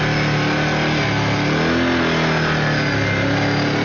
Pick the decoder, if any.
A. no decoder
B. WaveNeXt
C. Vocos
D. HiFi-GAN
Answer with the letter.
A